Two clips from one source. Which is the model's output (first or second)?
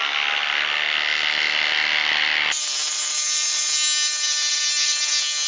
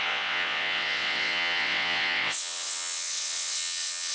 second